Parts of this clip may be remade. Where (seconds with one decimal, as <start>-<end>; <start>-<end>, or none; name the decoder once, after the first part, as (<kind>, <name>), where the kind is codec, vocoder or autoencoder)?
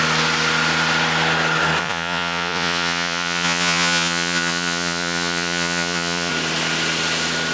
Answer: 1.8-6.3 (vocoder, Vocos)